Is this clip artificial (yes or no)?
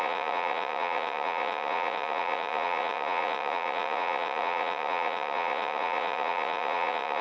yes